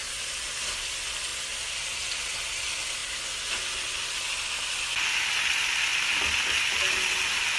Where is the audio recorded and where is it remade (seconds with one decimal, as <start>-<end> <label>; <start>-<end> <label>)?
0.0-7.6 recorded